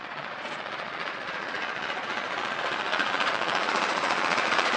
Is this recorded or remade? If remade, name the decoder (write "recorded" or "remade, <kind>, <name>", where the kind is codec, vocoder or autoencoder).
remade, vocoder, Vocos